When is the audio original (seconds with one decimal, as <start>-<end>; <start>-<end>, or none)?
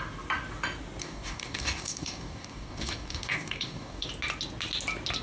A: 0.0-1.0; 4.1-5.2